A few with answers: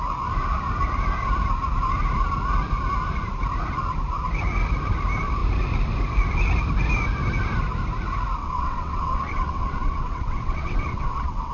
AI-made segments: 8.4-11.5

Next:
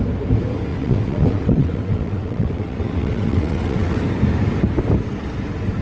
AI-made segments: 0.7-4.0

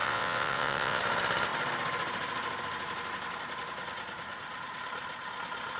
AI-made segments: 0.0-1.0